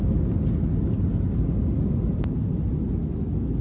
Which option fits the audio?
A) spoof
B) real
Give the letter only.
B